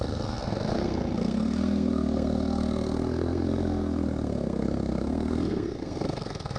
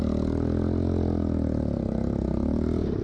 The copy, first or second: first